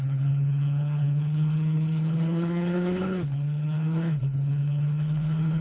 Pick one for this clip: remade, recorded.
remade